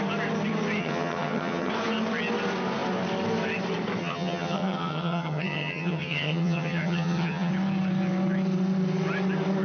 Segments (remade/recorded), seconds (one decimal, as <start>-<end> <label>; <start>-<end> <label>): 0.0-0.8 recorded; 0.8-1.7 remade; 1.7-4.0 recorded; 4.0-7.5 remade; 7.5-9.6 recorded